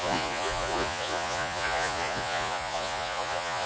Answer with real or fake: fake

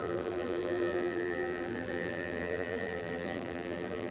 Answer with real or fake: fake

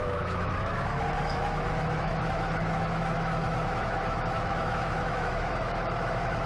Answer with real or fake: fake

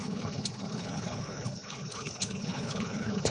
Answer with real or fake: fake